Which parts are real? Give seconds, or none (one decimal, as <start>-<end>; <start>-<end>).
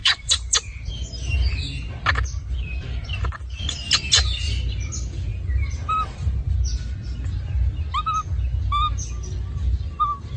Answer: 0.9-5.3; 6.4-10.4